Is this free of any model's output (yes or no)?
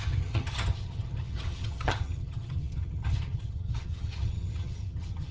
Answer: no